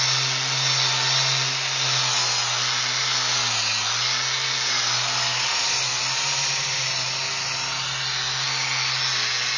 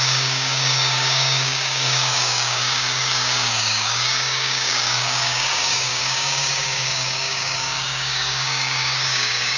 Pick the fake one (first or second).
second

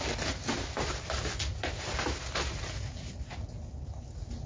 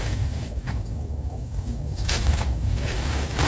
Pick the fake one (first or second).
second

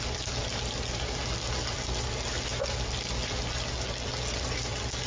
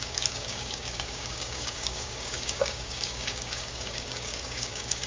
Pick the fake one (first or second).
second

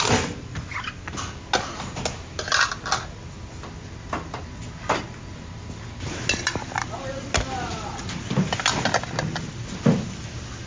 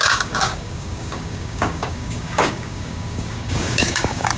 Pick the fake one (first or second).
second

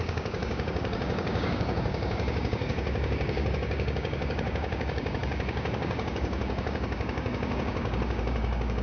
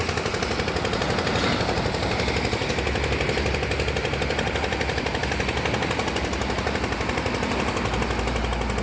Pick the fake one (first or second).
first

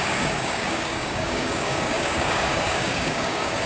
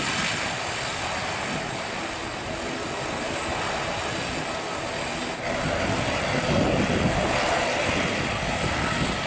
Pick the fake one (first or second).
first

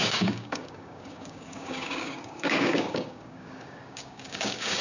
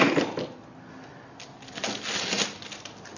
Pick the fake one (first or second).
first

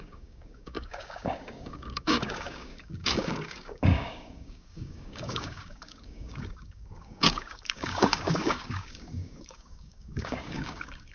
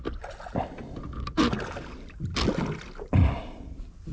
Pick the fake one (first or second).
first